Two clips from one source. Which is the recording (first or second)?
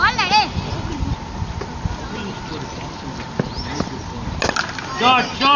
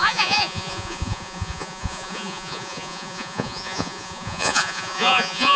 first